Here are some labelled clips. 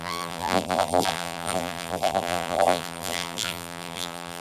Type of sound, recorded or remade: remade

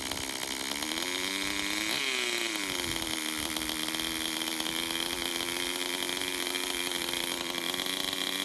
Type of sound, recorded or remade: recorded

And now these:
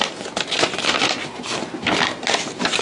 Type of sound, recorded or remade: recorded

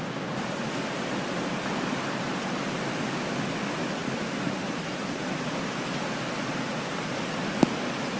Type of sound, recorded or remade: recorded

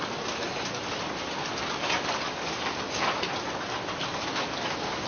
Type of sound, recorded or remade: recorded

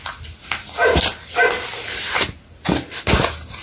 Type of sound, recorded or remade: recorded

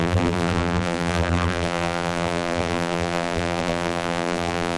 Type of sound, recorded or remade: remade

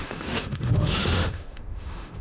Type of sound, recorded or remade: remade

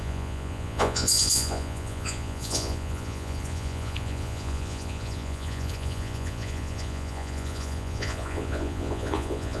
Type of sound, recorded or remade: remade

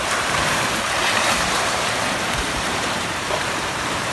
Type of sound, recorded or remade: remade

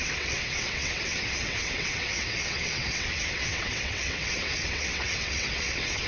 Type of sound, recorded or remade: remade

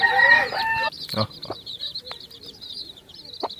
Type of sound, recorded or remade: remade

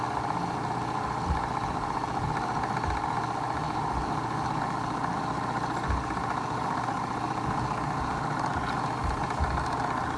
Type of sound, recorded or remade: recorded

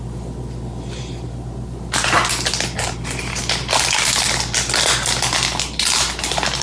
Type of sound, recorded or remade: recorded